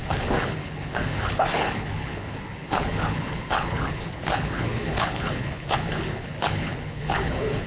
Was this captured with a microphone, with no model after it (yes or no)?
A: no